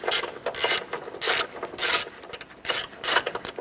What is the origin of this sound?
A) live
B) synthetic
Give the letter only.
A